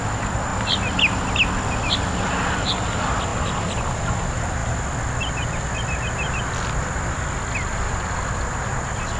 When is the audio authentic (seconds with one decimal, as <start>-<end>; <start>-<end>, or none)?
0.5-1.9; 4.6-9.2